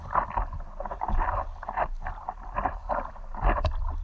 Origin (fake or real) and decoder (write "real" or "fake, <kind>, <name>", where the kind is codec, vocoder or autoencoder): real